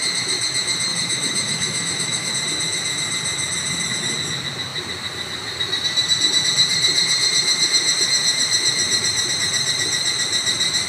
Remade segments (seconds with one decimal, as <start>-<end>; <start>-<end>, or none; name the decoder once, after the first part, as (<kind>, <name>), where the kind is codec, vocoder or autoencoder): 0.9-2.3 (autoencoder, DAC-VAE)